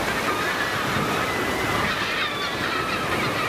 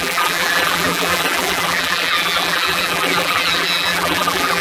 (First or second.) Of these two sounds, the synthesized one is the second